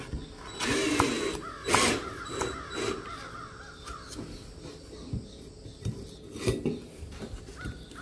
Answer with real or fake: real